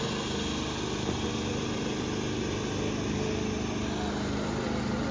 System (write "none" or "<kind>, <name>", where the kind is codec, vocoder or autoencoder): none